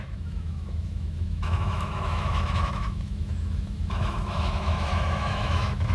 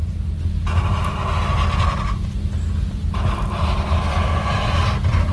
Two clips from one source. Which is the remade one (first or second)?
first